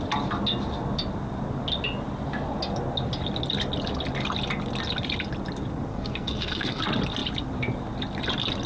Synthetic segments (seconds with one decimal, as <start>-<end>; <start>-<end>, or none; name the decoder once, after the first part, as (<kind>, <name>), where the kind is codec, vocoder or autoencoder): 5.9-6.8 (codec, SNAC)